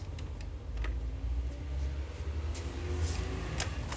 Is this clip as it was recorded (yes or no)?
yes